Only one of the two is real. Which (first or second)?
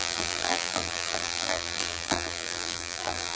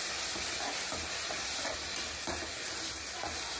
second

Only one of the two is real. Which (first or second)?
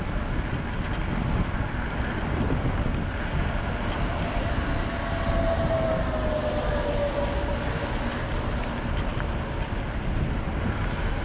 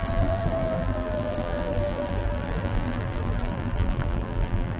first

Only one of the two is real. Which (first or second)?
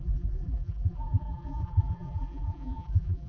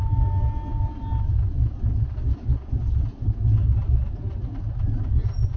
second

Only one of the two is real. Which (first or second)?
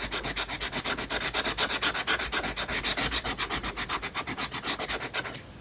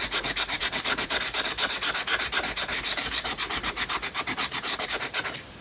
first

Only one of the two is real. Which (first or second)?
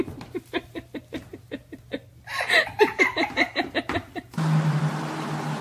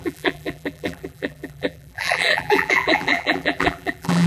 first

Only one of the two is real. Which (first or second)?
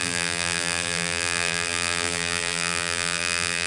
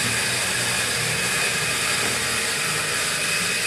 second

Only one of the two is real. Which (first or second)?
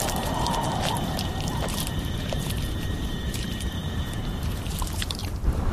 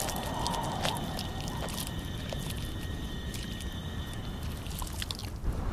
second